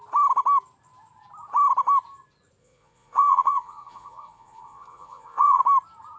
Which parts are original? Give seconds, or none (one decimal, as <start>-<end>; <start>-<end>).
0.0-2.6; 5.6-6.2